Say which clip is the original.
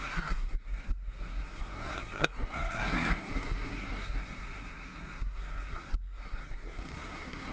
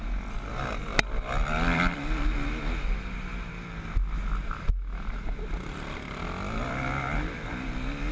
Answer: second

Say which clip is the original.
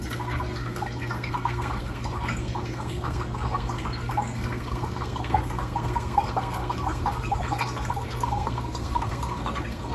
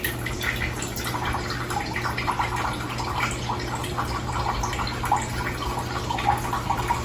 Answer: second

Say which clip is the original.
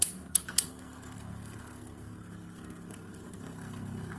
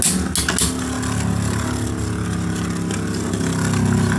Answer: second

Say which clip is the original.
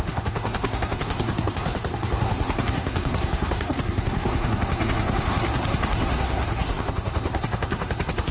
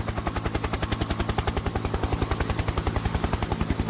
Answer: second